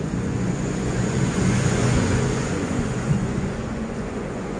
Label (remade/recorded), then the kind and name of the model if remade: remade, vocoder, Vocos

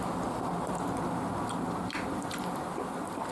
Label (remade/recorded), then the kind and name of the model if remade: recorded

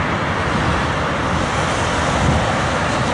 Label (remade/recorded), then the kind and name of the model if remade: recorded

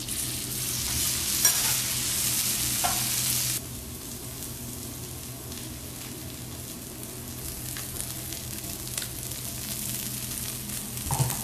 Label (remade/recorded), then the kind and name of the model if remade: recorded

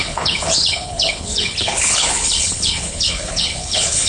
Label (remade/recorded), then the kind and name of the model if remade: remade, codec, HILCodec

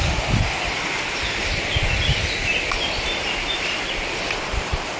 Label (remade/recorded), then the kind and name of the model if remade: recorded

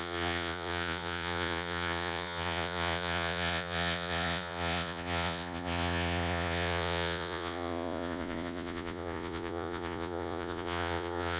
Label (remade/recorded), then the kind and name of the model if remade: remade, vocoder, Vocos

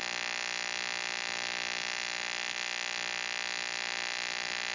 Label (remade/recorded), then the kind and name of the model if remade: recorded